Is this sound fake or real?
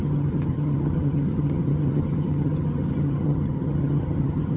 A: fake